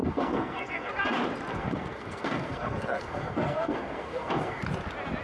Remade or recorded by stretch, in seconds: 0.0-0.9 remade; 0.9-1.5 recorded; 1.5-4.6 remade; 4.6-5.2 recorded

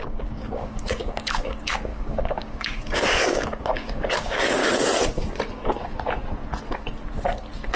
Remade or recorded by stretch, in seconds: 0.0-4.6 remade; 4.6-7.8 recorded

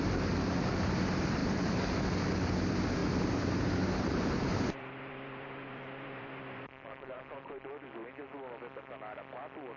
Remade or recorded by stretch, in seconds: 0.0-1.4 recorded; 1.4-1.9 remade; 1.9-3.0 recorded; 3.0-7.7 remade; 7.7-9.8 recorded

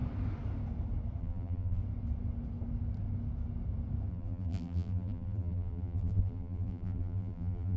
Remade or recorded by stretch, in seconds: 0.0-1.2 recorded; 1.2-1.8 remade; 1.8-4.1 recorded; 4.1-7.8 remade